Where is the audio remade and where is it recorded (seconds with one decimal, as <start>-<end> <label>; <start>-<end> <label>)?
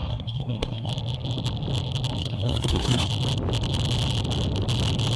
0.0-0.9 remade; 0.9-2.2 recorded; 2.2-3.1 remade; 3.1-5.2 recorded